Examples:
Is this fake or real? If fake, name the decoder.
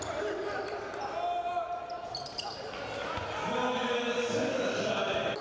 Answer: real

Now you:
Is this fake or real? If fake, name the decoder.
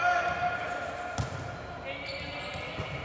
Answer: real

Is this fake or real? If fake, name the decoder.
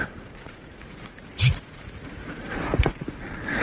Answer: fake, vocoder, Vocos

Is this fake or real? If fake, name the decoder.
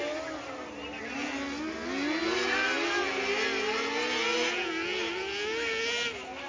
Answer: real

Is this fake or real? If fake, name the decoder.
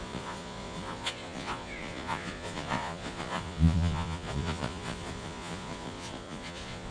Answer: fake, vocoder, Vocos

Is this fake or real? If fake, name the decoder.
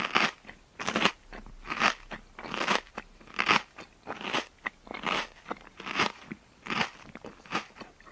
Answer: real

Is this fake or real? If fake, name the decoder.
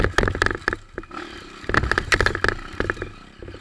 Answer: real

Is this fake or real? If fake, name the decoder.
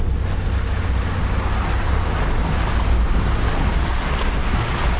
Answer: real